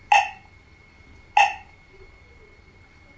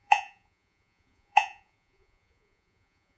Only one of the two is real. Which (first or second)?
first